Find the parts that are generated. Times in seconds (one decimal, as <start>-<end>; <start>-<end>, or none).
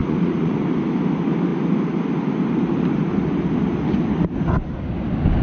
0.0-0.6